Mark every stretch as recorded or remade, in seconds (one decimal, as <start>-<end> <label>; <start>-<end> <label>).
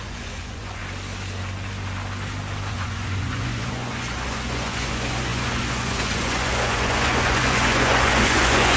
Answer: 0.0-0.8 remade; 0.8-2.7 recorded; 2.7-8.8 remade